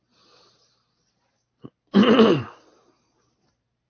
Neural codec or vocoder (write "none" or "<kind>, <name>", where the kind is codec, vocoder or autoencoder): vocoder, BigVGAN v2